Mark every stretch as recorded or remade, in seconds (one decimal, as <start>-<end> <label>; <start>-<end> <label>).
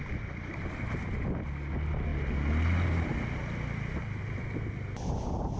0.0-5.6 recorded